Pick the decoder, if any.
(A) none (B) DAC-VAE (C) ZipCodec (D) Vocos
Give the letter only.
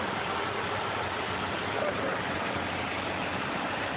A